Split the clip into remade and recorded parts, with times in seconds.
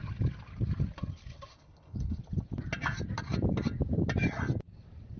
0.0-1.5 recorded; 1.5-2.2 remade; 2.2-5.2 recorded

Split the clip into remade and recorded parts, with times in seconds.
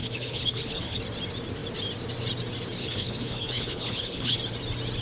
0.0-1.0 remade; 1.0-2.8 recorded; 2.8-4.4 remade; 4.4-5.0 recorded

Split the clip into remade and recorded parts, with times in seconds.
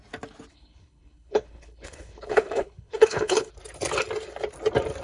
0.0-0.5 recorded; 0.5-3.5 remade; 3.5-5.0 recorded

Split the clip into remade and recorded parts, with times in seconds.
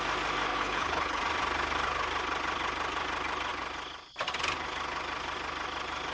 0.0-0.5 recorded; 0.5-1.2 remade; 1.2-6.1 recorded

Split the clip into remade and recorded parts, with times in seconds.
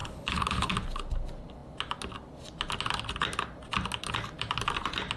0.0-0.7 remade; 0.7-5.2 recorded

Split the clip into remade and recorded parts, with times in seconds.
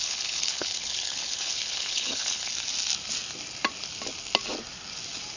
0.0-2.5 remade; 2.5-5.4 recorded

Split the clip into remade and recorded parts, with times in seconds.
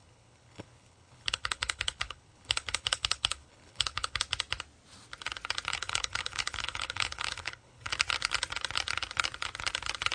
0.0-4.2 remade; 4.2-5.7 recorded; 5.7-7.9 remade; 7.9-10.1 recorded